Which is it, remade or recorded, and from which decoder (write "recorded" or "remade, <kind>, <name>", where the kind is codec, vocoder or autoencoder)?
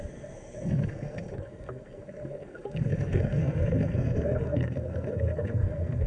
remade, codec, SNAC